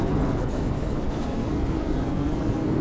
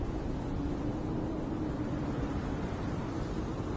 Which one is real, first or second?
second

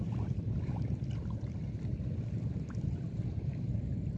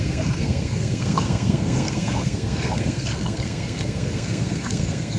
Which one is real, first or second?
first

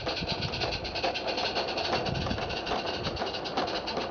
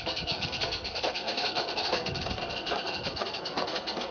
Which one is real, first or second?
first